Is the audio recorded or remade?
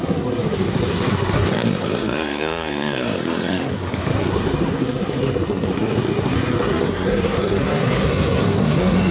remade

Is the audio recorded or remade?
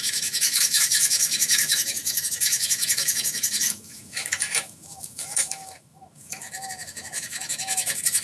remade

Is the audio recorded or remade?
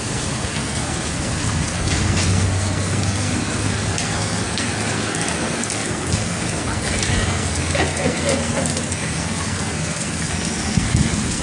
remade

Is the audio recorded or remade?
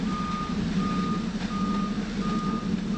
recorded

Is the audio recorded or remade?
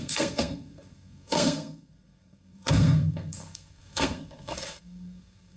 remade